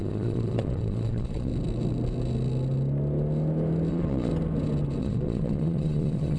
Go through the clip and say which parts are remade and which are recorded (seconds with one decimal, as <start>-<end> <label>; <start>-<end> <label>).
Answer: 0.0-1.5 remade; 1.5-3.9 recorded; 3.9-4.3 remade; 4.3-5.0 recorded; 5.0-6.4 remade